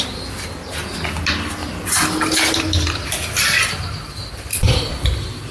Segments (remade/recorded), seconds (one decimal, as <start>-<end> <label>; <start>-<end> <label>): 0.0-1.6 recorded; 1.6-4.9 remade; 4.9-5.5 recorded